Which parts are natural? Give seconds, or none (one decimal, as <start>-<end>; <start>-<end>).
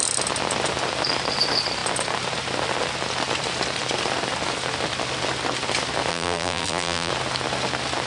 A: 0.0-6.1; 7.1-8.1